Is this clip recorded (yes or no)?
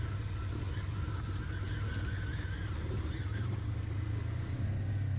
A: yes